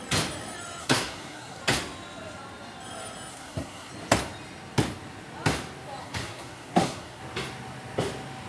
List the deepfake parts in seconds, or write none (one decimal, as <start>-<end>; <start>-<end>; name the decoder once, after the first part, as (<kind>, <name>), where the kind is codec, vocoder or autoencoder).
0.8-1.6 (codec, SNAC); 3.3-3.9; 6.0-7.2